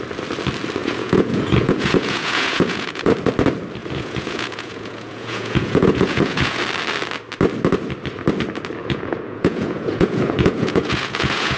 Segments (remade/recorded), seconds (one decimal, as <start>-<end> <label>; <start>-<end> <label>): 0.0-0.8 recorded; 0.8-3.1 remade; 3.1-3.8 recorded; 3.8-6.6 remade; 6.6-8.8 recorded; 8.8-11.6 remade